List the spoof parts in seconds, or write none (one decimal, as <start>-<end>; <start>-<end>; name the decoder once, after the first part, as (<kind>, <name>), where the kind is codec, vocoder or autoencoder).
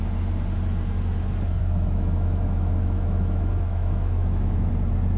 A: 1.6-4.7 (autoencoder, DAC-VAE)